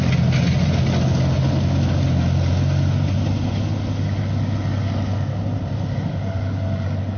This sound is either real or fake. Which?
real